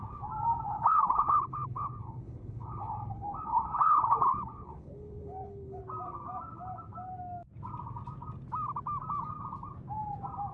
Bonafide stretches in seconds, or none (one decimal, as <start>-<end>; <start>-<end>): 0.0-0.7; 5.8-10.5